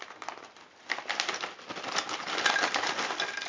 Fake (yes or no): no